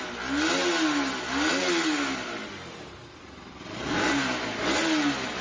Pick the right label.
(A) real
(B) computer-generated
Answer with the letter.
A